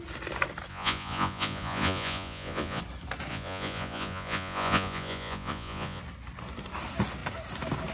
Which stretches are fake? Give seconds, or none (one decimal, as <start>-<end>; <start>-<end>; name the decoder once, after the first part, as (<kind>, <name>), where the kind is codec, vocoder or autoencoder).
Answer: 0.7-2.8 (vocoder, Vocos); 3.3-6.0